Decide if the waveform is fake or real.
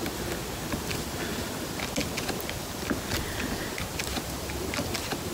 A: real